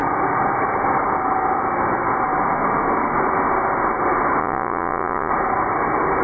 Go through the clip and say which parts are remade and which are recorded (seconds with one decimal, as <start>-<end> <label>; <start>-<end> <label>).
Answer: 0.0-4.4 recorded; 4.4-5.3 remade; 5.3-6.2 recorded